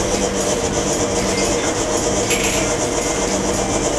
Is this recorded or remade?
recorded